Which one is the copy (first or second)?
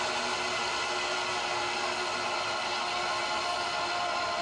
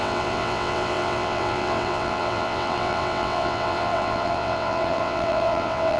second